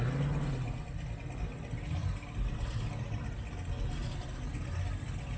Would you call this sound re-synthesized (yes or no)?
no